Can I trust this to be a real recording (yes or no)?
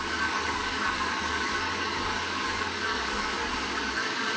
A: no